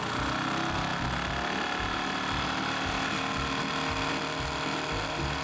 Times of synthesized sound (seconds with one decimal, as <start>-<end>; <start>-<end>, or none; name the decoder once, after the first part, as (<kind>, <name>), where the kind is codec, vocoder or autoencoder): none